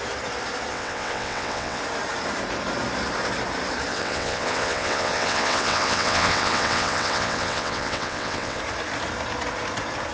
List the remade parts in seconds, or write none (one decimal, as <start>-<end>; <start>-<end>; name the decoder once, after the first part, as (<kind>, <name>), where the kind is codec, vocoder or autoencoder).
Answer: 0.7-1.8 (vocoder, WaveNeXt); 3.9-8.6